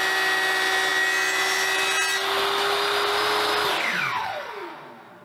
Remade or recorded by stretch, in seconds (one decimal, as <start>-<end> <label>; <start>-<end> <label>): 0.0-4.2 recorded; 4.2-4.7 remade; 4.7-5.2 recorded